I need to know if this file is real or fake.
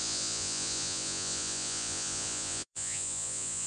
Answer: fake